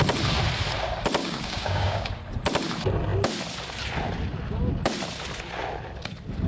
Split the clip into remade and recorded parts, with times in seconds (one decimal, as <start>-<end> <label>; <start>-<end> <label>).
0.0-1.2 recorded; 1.2-2.1 remade; 2.1-6.5 recorded